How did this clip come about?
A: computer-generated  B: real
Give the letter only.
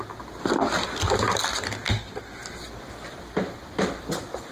B